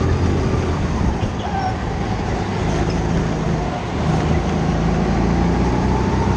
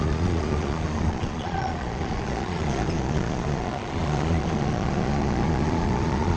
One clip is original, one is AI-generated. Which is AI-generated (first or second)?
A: second